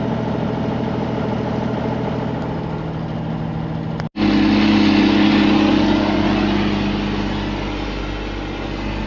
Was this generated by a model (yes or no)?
no